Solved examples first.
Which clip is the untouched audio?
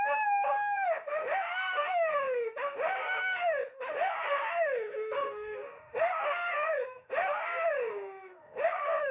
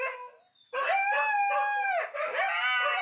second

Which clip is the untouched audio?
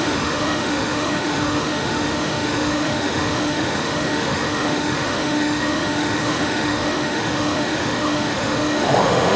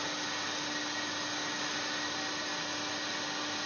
second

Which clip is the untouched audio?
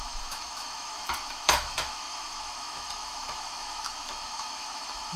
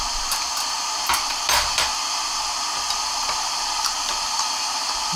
second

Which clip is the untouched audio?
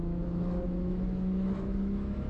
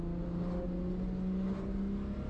second